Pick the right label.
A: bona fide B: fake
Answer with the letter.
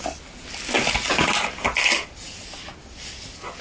A